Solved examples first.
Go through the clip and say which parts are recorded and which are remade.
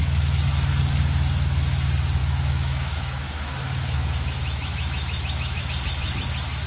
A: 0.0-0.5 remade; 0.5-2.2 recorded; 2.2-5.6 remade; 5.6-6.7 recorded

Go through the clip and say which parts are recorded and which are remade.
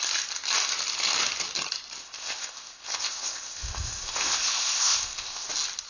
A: 0.0-2.0 recorded; 2.0-5.5 remade; 5.5-5.9 recorded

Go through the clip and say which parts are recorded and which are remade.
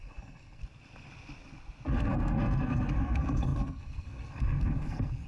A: 0.0-0.6 remade; 0.6-2.0 recorded; 2.0-5.3 remade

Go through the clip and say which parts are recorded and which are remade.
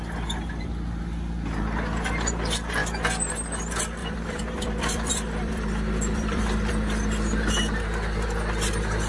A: 0.0-4.0 recorded; 4.0-6.7 remade; 6.7-9.1 recorded